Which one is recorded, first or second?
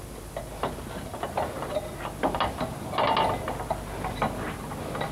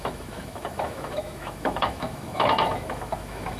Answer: first